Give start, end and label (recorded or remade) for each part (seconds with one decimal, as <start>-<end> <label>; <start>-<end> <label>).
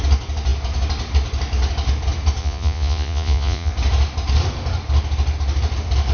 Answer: 0.0-2.4 recorded; 2.4-3.7 remade; 3.7-6.1 recorded